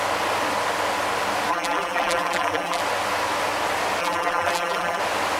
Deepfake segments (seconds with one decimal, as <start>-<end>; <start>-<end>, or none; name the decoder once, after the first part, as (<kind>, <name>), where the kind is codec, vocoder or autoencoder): 1.5-2.8 (vocoder, BigVGAN v2); 4.0-5.0